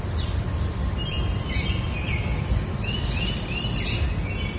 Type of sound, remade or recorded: recorded